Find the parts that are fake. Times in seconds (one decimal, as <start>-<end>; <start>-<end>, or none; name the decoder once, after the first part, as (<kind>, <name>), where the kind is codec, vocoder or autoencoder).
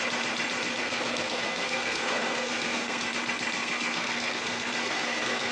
0.8-3.1 (codec, SNAC); 3.6-5.5